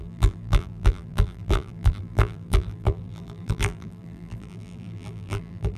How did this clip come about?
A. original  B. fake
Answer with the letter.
B